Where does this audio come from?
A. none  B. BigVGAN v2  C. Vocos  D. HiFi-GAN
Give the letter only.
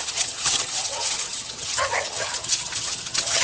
D